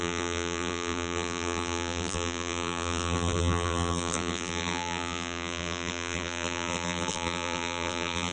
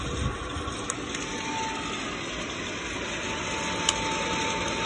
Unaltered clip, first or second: second